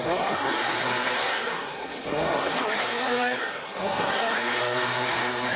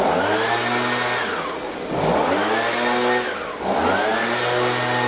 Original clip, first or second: second